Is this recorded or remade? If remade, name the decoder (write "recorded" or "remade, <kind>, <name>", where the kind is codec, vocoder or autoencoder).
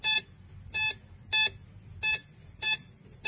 recorded